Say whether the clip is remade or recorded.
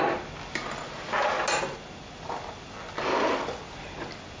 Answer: recorded